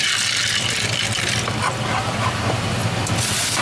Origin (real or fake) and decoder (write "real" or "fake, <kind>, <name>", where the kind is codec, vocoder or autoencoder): real